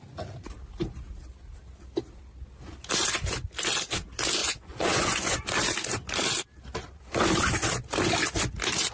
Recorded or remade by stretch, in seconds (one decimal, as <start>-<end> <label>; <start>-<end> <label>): 0.0-4.4 recorded; 4.4-5.4 remade; 5.4-8.9 recorded